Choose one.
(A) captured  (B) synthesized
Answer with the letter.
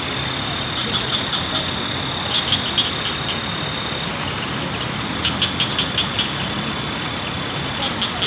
A